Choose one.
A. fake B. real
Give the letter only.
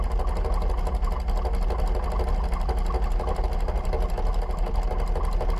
B